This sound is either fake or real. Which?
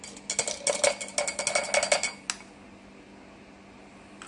real